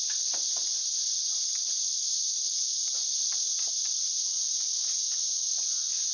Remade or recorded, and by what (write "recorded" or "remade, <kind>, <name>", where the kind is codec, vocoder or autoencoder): recorded